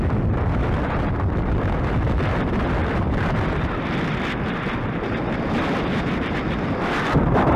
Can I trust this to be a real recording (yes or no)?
no